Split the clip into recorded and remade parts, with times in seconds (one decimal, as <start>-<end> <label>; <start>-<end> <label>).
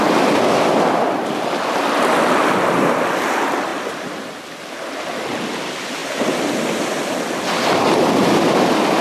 0.0-9.0 recorded